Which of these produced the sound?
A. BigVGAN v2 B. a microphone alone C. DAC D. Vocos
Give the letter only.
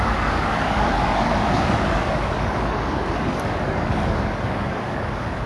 C